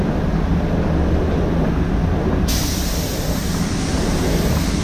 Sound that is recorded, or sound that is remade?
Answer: recorded